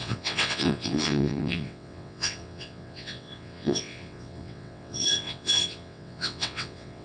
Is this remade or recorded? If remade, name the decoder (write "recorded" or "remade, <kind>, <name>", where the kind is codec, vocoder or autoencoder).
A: remade, vocoder, WaveNeXt